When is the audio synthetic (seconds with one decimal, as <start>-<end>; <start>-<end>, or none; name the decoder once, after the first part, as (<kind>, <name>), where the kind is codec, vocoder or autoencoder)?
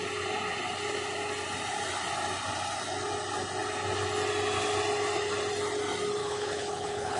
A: 6.2-7.2 (codec, HILCodec)